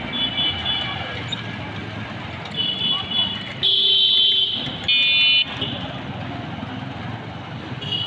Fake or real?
real